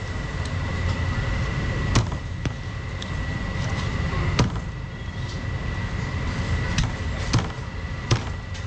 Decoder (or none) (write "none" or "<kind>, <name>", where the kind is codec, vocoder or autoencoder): none